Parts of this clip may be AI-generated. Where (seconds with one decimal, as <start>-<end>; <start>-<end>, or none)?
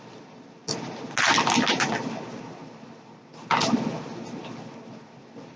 none